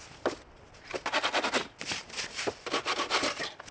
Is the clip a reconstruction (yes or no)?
no